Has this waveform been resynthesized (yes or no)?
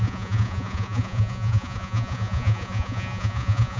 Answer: yes